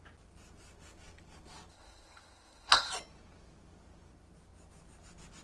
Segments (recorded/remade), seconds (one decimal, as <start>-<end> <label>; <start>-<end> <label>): 0.0-1.7 recorded; 1.7-2.9 remade; 2.9-5.4 recorded